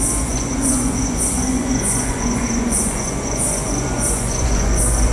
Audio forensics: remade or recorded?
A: remade